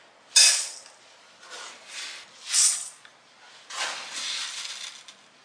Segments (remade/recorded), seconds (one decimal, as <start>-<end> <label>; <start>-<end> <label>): 0.0-5.4 recorded